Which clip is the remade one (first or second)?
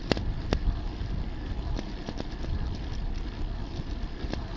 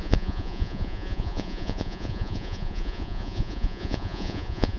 second